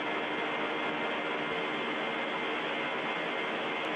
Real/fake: real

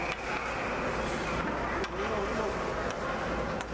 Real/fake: real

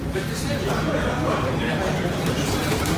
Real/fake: fake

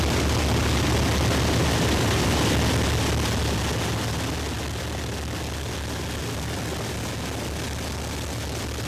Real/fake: real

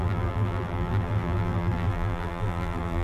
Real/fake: fake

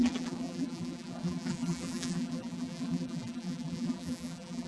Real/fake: fake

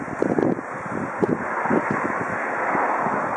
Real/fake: real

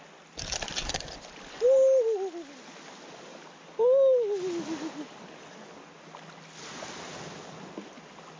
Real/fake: real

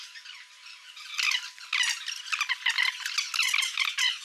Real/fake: real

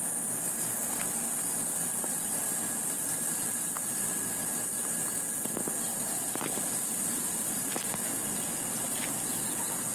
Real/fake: real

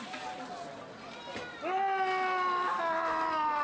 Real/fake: real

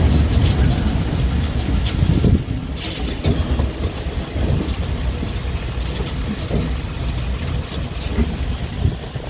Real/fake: real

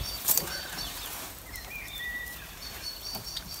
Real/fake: fake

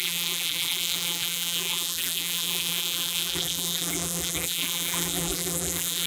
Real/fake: fake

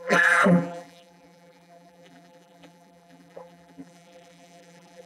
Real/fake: fake